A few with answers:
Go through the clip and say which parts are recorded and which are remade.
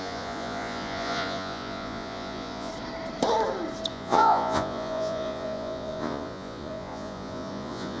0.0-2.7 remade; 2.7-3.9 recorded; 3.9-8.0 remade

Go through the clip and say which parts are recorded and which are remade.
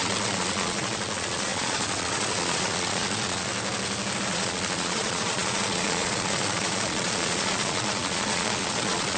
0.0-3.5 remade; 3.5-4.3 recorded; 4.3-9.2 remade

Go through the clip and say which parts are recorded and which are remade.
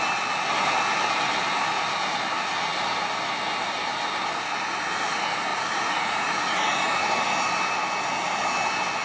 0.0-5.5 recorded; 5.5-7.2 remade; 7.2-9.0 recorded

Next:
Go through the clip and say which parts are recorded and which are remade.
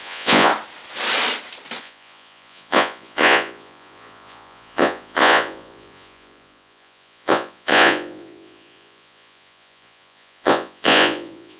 0.0-0.5 remade; 0.5-1.8 recorded; 1.8-11.6 remade